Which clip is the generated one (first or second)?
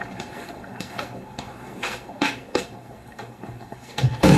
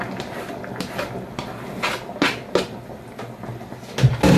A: first